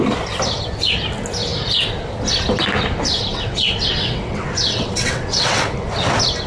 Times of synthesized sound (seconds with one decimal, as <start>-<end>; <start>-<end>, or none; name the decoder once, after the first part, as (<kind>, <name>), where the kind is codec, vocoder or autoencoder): 3.3-5.6 (vocoder, WaveNeXt)